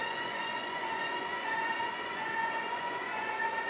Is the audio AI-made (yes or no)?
yes